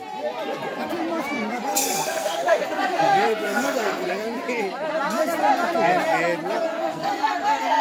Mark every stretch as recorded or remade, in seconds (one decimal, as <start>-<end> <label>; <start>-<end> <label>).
0.0-1.7 recorded; 1.7-4.1 remade; 4.1-6.7 recorded; 6.7-7.8 remade